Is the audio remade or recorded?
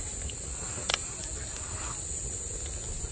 recorded